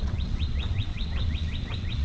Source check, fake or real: fake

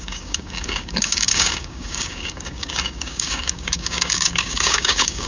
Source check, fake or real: fake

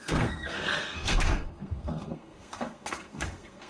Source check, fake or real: fake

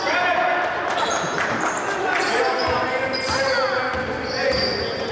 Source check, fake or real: real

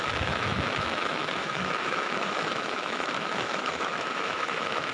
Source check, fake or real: fake